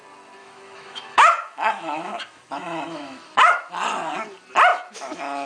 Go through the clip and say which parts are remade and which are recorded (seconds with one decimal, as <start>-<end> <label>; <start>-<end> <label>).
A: 0.0-0.4 recorded; 0.4-3.7 remade; 3.7-4.7 recorded; 4.7-5.5 remade